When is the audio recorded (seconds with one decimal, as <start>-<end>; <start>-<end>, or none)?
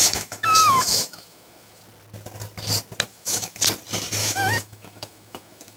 1.8-3.1; 3.6-4.2